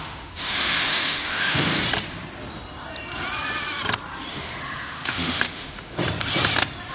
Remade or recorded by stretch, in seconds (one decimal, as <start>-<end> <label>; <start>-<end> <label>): 0.0-1.7 remade; 1.7-4.3 recorded; 4.3-6.0 remade; 6.0-6.9 recorded